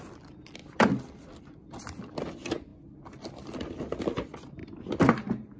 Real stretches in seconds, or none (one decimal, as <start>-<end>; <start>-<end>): 0.0-2.7; 3.9-5.6